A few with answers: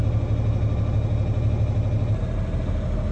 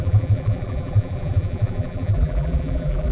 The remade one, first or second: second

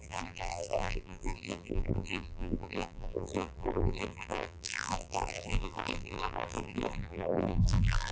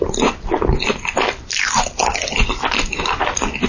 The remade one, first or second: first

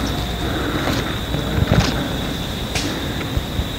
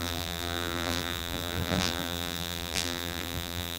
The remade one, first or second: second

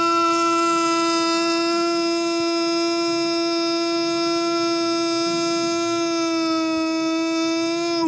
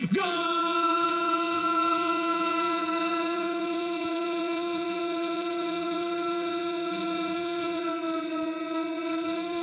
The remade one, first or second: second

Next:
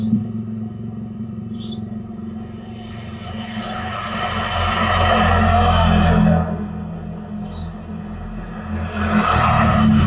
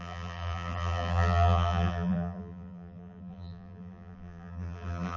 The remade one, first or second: second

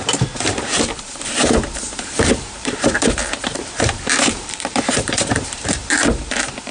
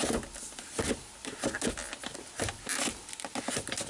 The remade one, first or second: first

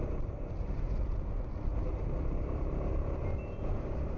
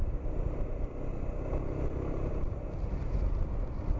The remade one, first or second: second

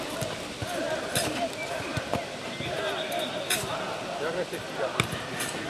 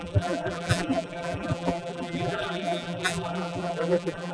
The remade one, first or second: second